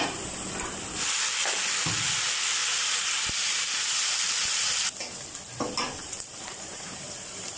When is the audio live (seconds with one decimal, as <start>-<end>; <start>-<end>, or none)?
0.0-2.6; 4.7-6.0